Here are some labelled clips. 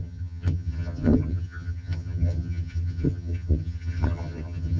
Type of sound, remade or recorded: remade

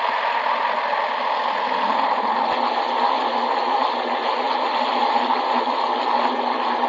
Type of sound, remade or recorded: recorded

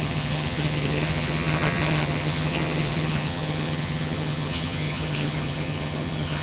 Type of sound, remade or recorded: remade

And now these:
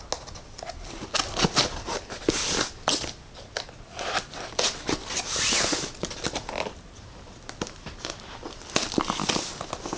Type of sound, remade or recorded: recorded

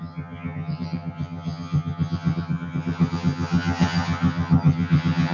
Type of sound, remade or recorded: remade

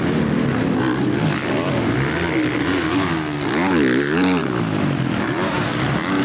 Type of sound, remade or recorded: recorded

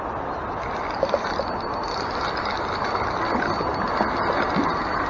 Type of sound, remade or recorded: recorded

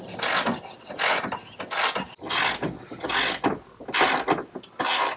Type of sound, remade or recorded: recorded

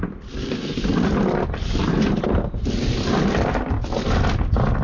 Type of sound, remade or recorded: recorded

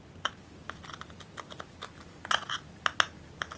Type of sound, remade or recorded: recorded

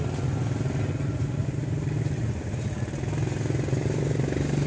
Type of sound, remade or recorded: recorded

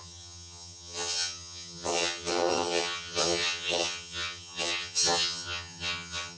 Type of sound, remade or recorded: remade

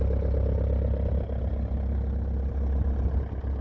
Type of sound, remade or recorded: recorded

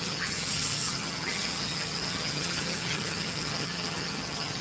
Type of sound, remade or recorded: remade